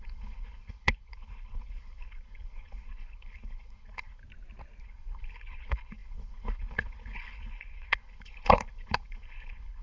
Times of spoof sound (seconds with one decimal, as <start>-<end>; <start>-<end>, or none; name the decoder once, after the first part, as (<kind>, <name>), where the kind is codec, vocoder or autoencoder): 0.0-4.2 (codec, HILCodec); 4.8-9.8